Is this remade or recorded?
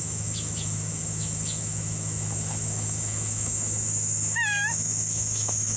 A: remade